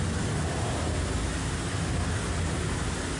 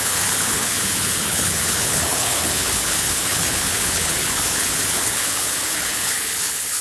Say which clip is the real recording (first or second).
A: first